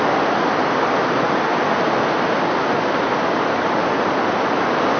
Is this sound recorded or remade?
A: recorded